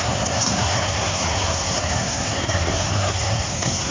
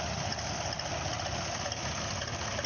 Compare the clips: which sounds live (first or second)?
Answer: second